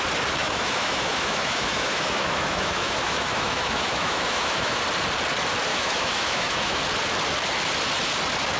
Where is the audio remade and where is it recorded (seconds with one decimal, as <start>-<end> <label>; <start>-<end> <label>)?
0.0-0.4 recorded; 0.4-4.8 remade; 4.8-5.7 recorded; 5.7-6.8 remade; 6.8-8.6 recorded